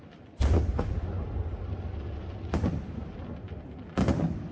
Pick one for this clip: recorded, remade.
recorded